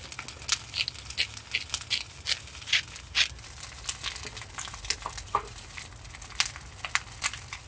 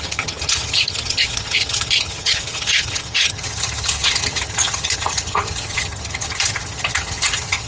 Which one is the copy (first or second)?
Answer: second